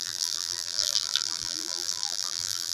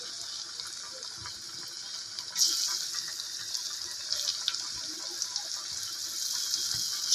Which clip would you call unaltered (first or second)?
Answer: second